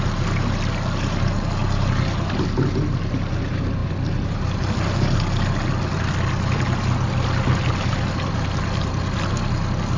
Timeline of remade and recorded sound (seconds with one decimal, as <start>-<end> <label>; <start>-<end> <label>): 0.0-10.0 recorded